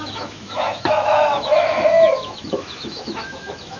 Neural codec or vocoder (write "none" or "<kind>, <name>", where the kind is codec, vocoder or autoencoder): autoencoder, DAC-VAE